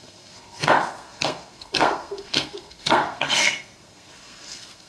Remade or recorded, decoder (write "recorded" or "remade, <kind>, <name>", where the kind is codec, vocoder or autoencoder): remade, codec, SNAC